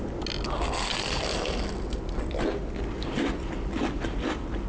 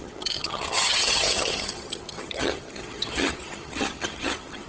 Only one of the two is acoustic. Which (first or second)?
first